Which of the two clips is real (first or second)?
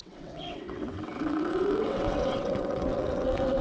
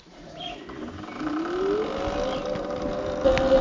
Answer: second